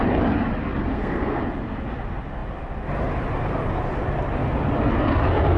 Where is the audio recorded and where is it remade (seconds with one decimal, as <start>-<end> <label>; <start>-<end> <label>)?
0.0-0.9 recorded; 0.9-1.4 remade; 1.4-5.6 recorded